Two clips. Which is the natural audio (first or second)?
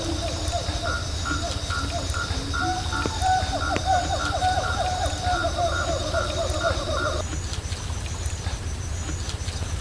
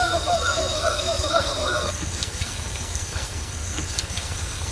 first